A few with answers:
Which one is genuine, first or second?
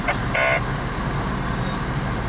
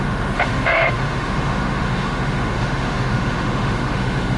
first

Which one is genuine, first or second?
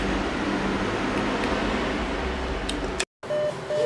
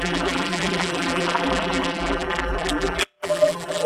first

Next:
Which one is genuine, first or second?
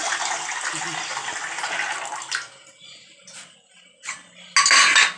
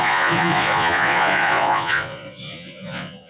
first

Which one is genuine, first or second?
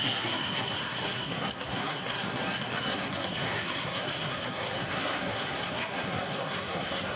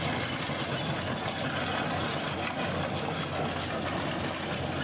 second